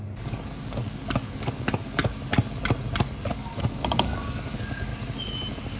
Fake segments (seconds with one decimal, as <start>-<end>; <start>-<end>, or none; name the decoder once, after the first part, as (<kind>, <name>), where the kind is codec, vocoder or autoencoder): 0.0-2.0 (codec, DAC); 3.3-4.9